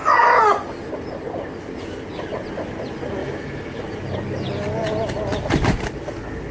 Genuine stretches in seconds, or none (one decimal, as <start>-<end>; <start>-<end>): 0.0-3.2; 3.8-6.5